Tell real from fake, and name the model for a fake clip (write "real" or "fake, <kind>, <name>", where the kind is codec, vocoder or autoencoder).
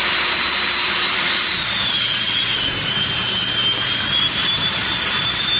fake, vocoder, BigVGAN v2